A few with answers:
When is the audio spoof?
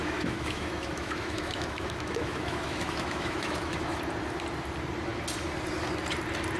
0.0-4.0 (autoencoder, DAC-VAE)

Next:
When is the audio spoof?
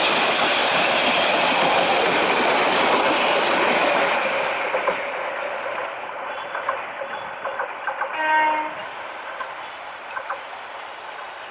none